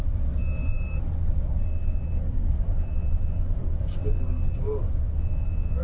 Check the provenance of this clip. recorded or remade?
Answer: recorded